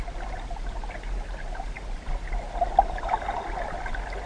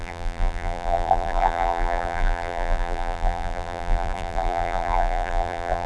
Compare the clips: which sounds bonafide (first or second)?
first